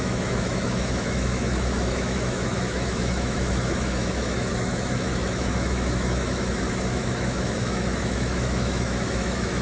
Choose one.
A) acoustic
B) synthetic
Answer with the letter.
B